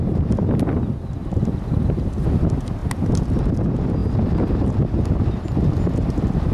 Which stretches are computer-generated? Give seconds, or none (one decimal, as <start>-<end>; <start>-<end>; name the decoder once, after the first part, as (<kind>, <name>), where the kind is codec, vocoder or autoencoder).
4.0-4.7 (vocoder, BigVGAN v2)